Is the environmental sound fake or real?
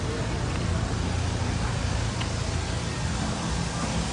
real